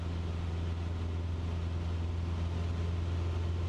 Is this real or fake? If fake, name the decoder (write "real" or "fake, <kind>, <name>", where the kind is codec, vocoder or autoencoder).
real